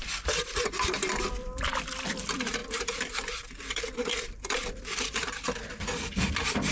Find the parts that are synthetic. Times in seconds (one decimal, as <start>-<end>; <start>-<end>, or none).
1.3-6.7